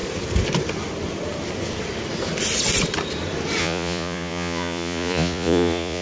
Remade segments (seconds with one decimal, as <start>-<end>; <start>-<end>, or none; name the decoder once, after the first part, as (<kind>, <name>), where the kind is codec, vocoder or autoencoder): 3.6-6.0 (vocoder, Vocos)